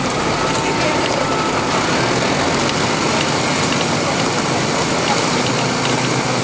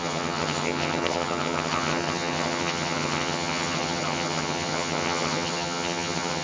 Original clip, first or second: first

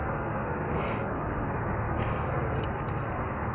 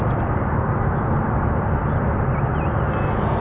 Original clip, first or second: second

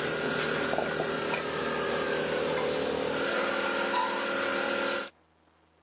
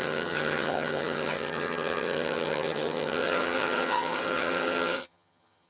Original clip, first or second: first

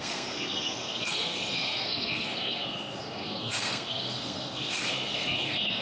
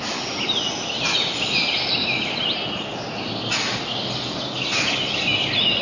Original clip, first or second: second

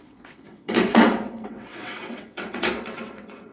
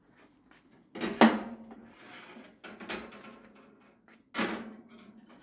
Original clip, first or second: second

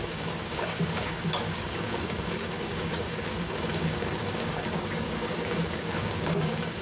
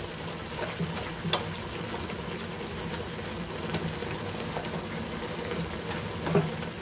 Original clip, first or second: second